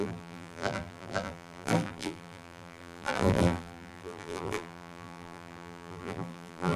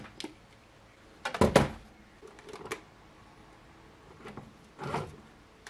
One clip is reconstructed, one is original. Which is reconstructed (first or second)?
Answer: first